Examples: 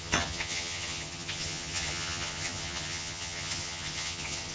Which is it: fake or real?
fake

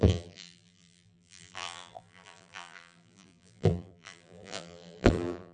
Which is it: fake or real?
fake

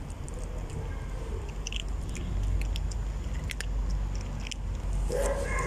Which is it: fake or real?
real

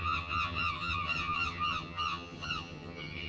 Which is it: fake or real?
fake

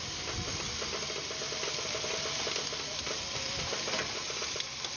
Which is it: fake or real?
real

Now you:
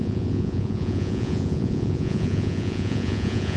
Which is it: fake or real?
fake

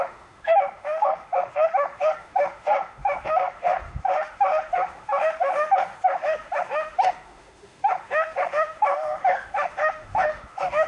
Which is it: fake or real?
fake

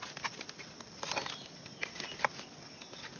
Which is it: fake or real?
real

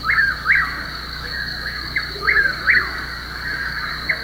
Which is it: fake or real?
fake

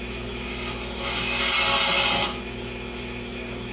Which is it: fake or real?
real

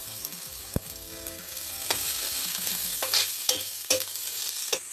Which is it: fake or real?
fake